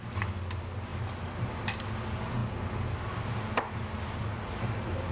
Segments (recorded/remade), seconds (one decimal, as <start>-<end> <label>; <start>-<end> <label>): 0.0-5.1 recorded